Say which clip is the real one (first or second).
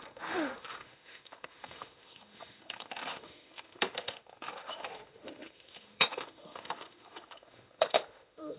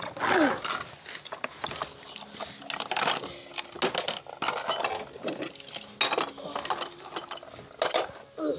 second